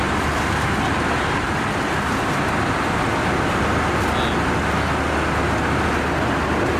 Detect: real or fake real